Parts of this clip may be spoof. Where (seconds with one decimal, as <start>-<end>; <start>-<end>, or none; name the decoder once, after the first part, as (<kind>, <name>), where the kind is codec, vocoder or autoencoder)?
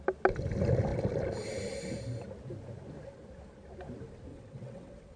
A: 4.3-5.2 (vocoder, WaveNeXt)